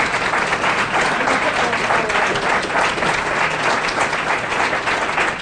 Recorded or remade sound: recorded